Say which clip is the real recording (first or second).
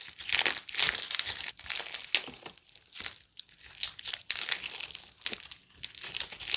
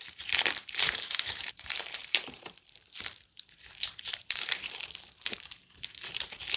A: first